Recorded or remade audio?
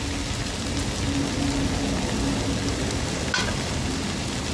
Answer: recorded